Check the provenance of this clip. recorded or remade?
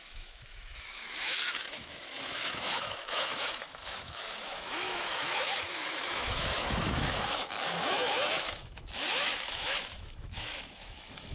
remade